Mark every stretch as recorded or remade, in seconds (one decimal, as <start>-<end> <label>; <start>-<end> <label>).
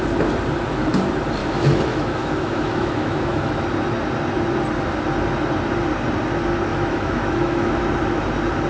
0.0-1.4 recorded; 1.4-3.6 remade; 3.6-6.7 recorded; 6.7-7.8 remade; 7.8-8.7 recorded